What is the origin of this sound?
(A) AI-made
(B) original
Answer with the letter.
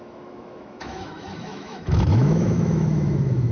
A